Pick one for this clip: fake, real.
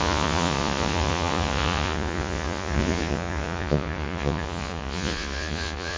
fake